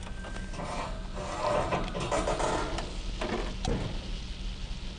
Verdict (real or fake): real